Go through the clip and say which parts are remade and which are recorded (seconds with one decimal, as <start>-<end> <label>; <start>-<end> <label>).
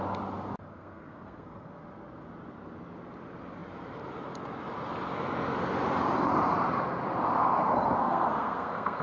0.0-0.7 recorded; 0.7-1.7 remade; 1.7-8.0 recorded; 8.0-9.0 remade